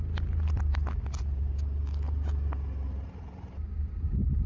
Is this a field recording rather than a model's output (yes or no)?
yes